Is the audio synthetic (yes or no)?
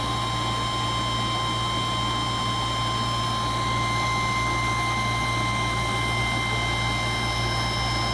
no